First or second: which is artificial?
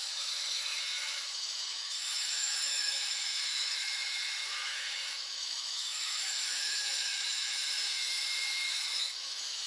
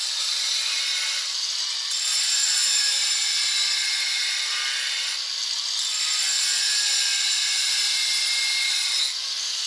first